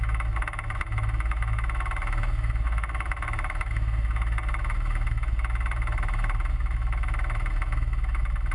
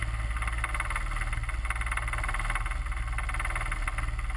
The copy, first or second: first